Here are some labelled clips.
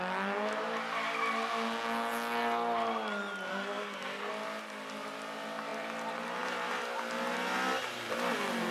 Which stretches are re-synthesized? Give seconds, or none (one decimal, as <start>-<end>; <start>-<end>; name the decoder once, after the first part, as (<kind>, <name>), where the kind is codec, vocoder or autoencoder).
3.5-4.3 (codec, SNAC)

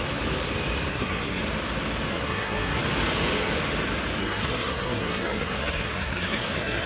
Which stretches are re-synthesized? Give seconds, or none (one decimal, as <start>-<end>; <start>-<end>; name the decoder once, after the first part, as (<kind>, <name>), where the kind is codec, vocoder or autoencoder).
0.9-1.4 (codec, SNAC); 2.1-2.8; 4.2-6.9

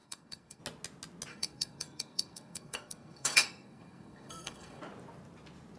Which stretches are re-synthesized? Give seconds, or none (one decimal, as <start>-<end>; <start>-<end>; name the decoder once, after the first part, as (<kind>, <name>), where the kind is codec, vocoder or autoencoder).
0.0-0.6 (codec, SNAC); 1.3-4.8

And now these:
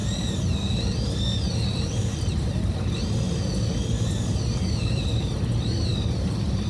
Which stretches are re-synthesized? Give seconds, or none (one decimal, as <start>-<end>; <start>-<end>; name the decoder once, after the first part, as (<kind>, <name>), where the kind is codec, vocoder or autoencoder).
none

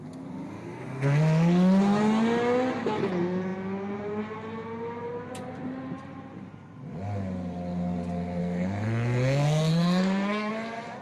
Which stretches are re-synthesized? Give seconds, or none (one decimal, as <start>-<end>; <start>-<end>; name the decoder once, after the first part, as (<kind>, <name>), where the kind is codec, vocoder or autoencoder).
8.4-10.5 (codec, SNAC)